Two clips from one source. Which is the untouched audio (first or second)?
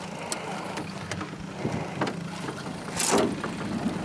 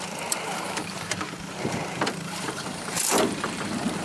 first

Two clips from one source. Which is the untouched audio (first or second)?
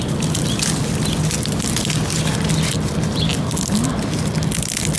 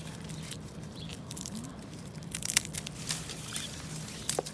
first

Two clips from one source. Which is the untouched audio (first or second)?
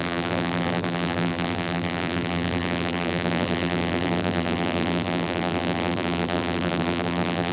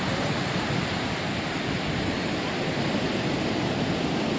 second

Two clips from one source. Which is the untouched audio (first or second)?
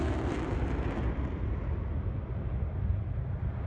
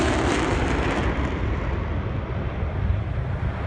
first